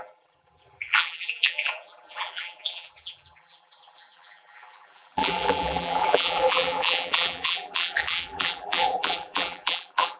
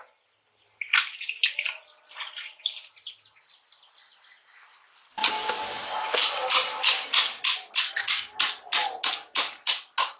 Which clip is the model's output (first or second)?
first